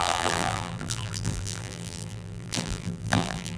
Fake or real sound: fake